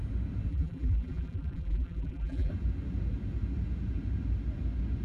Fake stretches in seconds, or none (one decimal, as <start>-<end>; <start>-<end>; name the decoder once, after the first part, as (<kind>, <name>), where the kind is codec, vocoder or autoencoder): 0.5-2.5 (vocoder, BigVGAN v2)